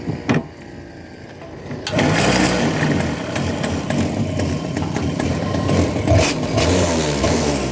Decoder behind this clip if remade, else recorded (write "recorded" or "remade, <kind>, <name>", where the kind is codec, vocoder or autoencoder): recorded